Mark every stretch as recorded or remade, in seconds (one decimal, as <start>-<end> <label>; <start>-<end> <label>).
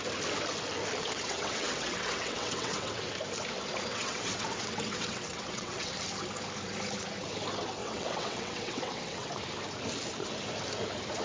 0.0-1.0 recorded; 1.0-3.1 remade; 3.1-3.9 recorded; 3.9-5.9 remade; 5.9-7.8 recorded; 7.8-9.3 remade; 9.3-11.2 recorded